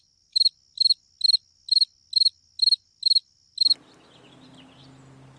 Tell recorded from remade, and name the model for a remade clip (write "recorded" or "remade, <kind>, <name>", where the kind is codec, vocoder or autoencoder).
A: recorded